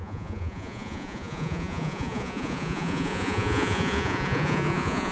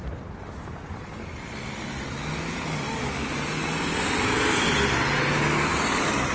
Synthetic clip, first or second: first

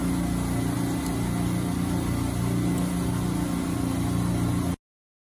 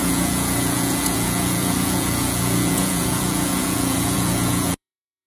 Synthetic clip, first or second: second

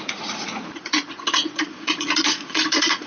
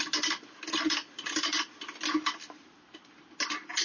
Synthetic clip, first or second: first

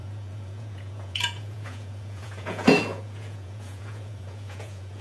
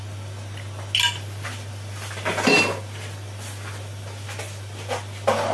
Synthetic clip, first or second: first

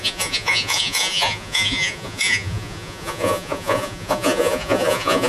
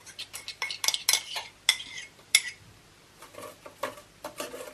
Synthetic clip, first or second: first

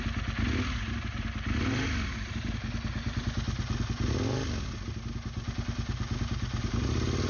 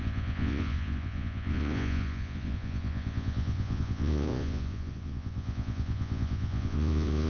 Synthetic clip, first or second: second